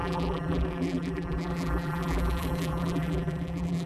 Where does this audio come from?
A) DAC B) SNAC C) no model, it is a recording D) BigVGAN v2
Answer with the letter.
D